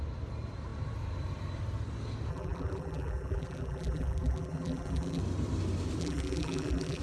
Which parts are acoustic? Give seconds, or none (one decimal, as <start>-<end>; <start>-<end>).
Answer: 0.0-2.3; 5.2-6.0